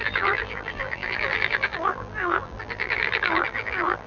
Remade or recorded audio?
remade